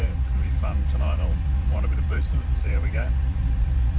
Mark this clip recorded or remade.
remade